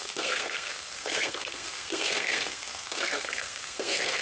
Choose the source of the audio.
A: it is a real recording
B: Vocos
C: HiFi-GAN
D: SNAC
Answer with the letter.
D